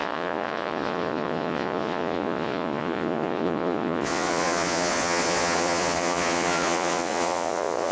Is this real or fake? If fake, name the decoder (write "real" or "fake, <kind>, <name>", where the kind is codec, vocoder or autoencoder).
fake, vocoder, Vocos